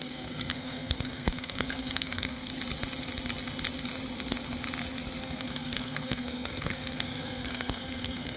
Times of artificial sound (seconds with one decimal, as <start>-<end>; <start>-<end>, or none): 0.0-2.5; 5.2-8.4

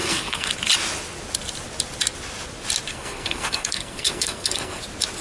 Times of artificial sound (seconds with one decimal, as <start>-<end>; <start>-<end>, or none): 0.0-0.5; 2.9-4.8

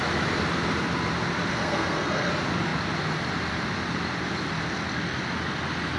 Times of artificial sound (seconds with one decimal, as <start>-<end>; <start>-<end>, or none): 1.5-2.3